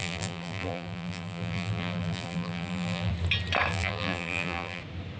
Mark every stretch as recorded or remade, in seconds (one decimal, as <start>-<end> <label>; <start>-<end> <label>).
0.0-3.1 remade; 3.1-3.7 recorded; 3.7-4.8 remade; 4.8-5.2 recorded